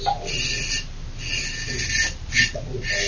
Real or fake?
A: real